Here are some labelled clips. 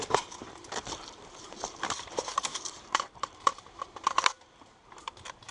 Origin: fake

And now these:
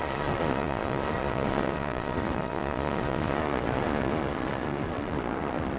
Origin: fake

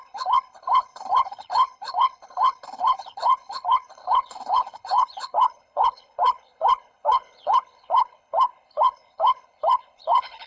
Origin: fake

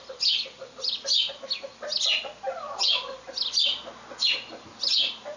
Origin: real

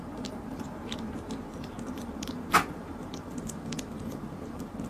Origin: fake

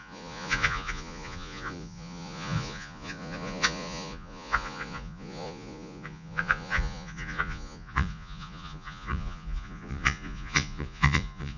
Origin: fake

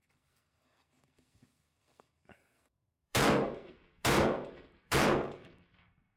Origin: fake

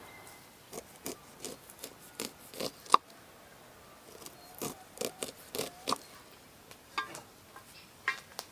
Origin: real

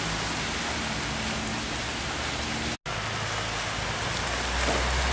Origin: real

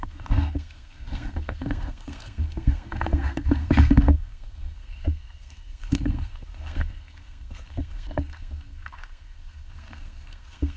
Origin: fake